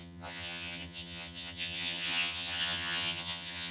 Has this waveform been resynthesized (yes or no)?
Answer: yes